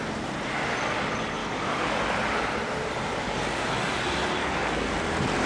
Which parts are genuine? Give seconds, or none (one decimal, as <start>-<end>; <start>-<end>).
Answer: 0.0-1.4; 2.0-3.1; 3.7-4.4; 4.9-5.5